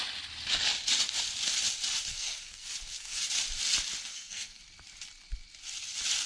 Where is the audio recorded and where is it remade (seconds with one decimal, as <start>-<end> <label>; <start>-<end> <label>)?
0.0-2.1 recorded; 2.1-3.2 remade; 3.2-4.1 recorded; 4.1-4.6 remade; 4.6-6.3 recorded